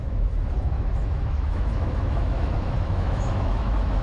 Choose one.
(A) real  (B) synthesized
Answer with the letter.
B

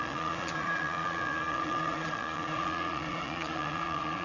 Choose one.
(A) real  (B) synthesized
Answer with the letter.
B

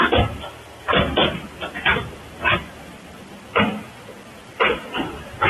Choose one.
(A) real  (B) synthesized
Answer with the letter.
A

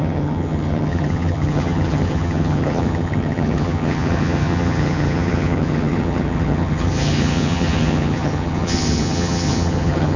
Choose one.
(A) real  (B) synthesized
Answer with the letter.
B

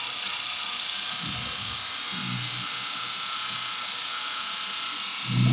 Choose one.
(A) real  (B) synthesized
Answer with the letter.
A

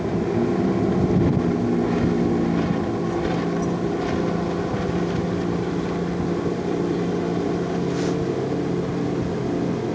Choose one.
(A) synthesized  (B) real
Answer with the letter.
B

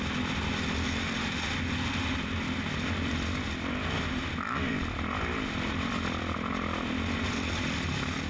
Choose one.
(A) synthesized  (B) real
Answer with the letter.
B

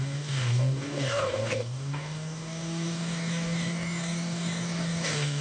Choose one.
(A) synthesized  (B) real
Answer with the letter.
A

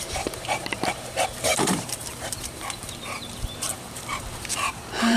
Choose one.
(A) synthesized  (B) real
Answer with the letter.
A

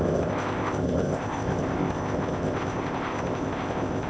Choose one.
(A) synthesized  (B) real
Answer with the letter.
A